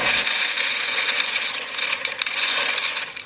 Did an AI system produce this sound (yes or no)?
yes